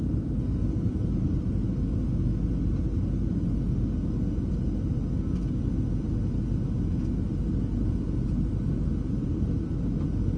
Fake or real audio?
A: real